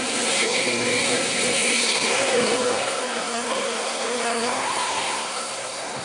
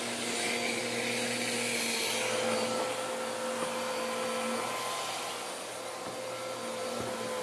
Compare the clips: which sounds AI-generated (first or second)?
first